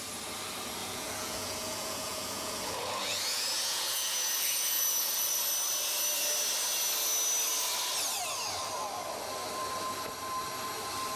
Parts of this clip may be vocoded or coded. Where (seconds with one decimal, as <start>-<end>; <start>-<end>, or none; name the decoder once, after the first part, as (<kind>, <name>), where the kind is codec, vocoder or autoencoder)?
0.8-5.3 (vocoder, Vocos)